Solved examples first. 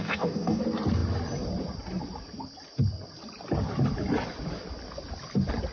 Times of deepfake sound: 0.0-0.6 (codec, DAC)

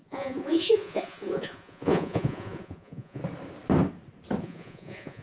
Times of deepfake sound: 0.0-3.2 (vocoder, Vocos); 4.4-5.2

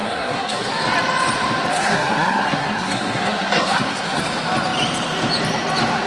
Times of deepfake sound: 0.0-0.7 (codec, SNAC); 1.7-4.2

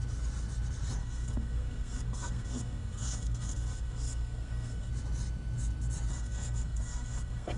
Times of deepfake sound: 1.0-4.9 (codec, SNAC); 6.1-7.6